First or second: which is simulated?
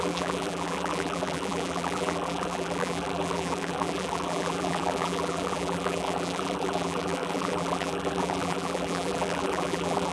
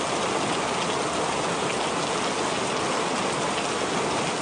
first